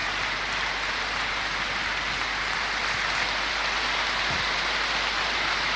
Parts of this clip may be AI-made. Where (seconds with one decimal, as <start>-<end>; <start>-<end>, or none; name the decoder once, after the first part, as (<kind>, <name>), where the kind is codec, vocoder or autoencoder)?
none